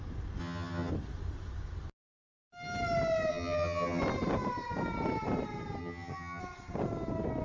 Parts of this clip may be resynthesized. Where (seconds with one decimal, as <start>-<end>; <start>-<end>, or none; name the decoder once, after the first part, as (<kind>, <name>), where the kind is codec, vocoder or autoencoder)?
0.4-0.9 (vocoder, HiFi-GAN); 3.3-4.0; 5.8-6.4